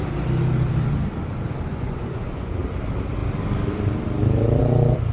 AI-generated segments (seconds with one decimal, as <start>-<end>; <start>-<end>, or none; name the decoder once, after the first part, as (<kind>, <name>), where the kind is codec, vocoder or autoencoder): 1.7-2.5 (vocoder, Vocos)